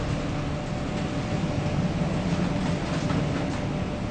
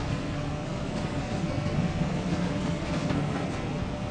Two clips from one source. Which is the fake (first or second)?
second